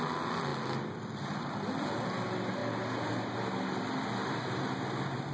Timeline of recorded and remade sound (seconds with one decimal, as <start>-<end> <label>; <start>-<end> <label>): 0.0-5.3 recorded